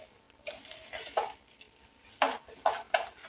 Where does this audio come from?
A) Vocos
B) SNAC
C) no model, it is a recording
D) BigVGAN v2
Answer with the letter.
C